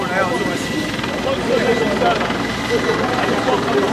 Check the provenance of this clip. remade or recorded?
recorded